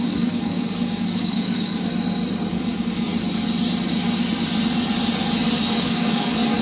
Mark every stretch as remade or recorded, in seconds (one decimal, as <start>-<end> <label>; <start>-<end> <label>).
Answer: 0.0-1.9 remade; 1.9-2.5 recorded; 2.5-3.1 remade; 3.1-5.7 recorded; 5.7-6.6 remade